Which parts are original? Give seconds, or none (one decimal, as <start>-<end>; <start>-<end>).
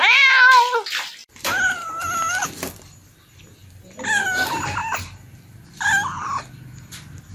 0.0-1.2; 2.5-7.3